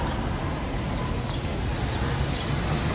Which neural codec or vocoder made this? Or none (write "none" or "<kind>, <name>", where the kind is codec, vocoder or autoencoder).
none